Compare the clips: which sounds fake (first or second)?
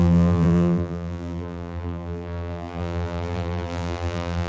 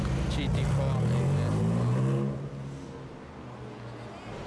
first